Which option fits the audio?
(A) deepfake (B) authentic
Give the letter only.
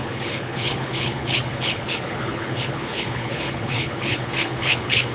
A